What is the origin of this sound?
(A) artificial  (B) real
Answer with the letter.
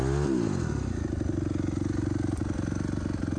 B